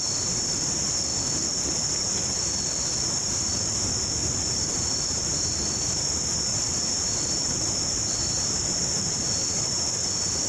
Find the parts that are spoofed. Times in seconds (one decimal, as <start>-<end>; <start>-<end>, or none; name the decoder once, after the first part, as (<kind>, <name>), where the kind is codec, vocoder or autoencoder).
4.2-6.1 (vocoder, BigVGAN v2); 6.5-9.9